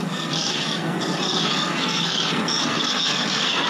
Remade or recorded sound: remade